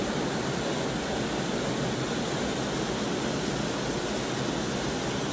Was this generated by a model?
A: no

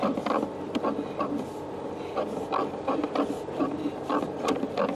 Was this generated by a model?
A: no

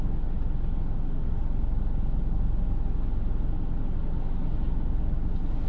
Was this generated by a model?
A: no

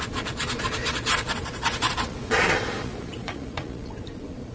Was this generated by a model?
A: yes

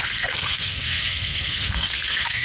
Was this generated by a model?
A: yes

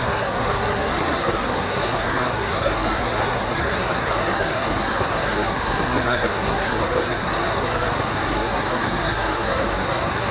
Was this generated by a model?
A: yes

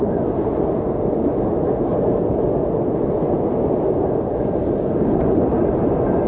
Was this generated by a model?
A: no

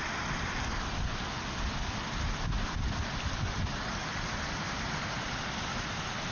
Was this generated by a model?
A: no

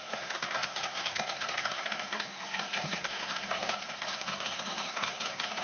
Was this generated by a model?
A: yes